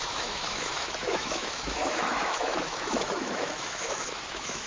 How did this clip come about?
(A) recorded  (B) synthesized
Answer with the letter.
B